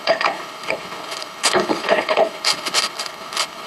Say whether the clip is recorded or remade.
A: remade